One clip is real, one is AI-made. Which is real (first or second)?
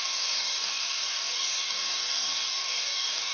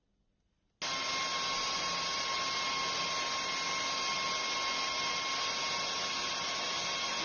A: second